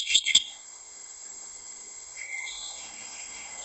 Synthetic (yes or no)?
yes